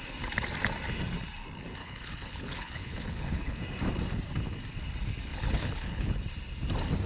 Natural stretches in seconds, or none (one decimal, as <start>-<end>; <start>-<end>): 0.0-1.8; 3.6-5.3; 6.1-7.1